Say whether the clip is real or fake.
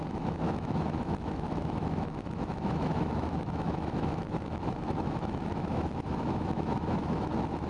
fake